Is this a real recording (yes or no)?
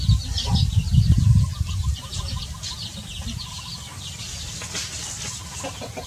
yes